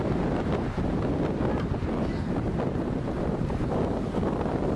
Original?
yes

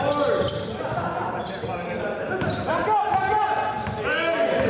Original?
yes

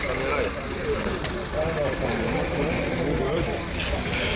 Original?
yes